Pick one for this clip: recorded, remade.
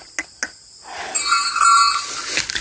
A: recorded